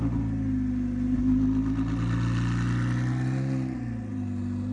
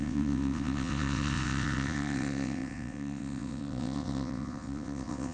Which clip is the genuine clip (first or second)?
first